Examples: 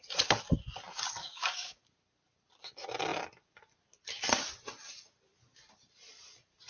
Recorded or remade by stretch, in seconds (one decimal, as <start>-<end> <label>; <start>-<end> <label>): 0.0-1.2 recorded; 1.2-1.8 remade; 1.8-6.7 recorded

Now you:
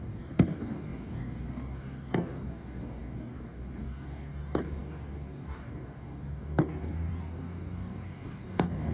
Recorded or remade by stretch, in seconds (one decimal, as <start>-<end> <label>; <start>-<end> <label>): 0.0-8.9 remade

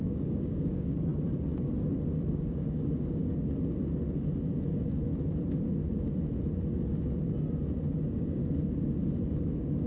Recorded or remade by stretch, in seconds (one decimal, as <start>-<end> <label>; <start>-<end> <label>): 0.0-1.1 remade; 1.1-2.3 recorded; 2.3-3.3 remade; 3.3-8.0 recorded; 8.0-8.4 remade; 8.4-9.4 recorded; 9.4-9.9 remade

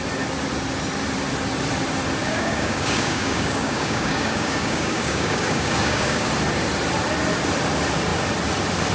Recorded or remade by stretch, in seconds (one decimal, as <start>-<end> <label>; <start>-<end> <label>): 0.0-2.2 recorded; 2.2-6.3 remade; 6.3-8.9 recorded

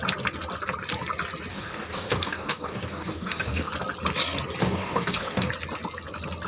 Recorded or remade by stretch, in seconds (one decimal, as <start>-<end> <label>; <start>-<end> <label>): 0.0-1.5 recorded; 1.5-3.7 remade; 3.7-4.6 recorded; 4.6-5.5 remade; 5.5-6.5 recorded

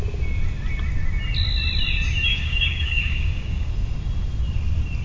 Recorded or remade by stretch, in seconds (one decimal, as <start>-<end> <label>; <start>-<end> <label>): 0.0-2.3 recorded; 2.3-3.7 remade; 3.7-5.0 recorded